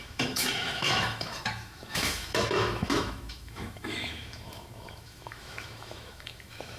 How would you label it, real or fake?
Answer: fake